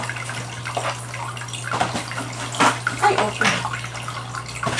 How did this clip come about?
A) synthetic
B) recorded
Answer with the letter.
B